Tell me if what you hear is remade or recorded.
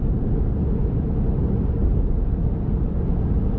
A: remade